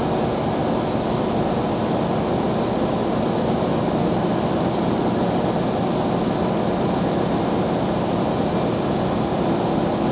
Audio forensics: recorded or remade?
recorded